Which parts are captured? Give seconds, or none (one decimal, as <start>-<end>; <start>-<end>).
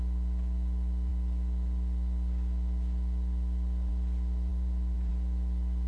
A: 0.0-4.5; 5.1-5.9